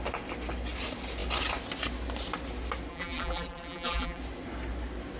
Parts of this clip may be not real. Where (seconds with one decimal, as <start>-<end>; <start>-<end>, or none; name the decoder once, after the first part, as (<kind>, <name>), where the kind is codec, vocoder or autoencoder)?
2.9-4.2 (vocoder, BigVGAN v2)